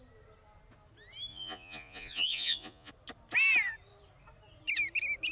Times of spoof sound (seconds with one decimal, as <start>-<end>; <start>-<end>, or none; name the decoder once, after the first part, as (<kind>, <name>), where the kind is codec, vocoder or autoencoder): 1.3-2.9 (vocoder, Vocos)